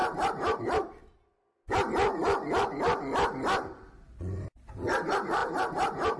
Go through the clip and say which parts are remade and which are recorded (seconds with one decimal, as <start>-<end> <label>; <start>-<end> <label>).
0.0-6.2 recorded